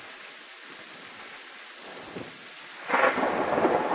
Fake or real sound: real